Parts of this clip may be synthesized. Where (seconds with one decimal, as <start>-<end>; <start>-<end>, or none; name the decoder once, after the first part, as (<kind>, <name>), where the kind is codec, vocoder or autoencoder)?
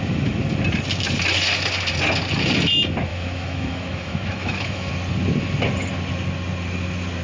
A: 3.1-4.9 (autoencoder, DAC-VAE)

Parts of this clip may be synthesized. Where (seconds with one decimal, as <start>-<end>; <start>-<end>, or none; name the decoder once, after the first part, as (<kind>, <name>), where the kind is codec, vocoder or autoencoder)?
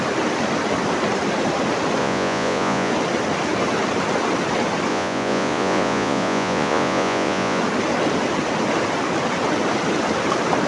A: 2.0-2.9 (vocoder, Vocos); 4.9-7.6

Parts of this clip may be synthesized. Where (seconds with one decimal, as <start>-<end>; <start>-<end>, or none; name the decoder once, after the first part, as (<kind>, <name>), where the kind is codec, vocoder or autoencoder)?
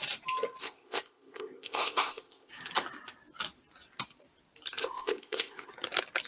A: 0.6-2.5 (codec, ZipCodec); 4.8-5.7